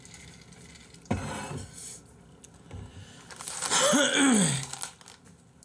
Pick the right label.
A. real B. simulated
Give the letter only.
A